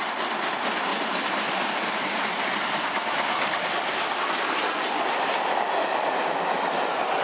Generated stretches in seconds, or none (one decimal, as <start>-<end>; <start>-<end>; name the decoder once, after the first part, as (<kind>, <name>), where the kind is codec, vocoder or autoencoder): none